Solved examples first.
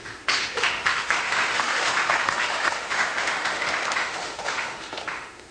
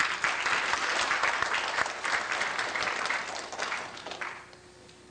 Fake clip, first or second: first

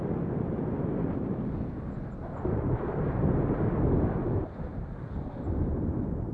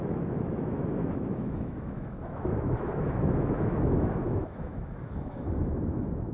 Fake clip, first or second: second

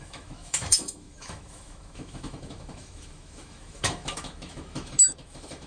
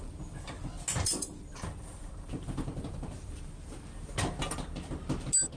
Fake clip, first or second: first